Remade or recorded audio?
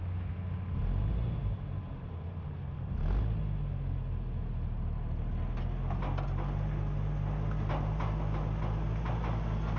recorded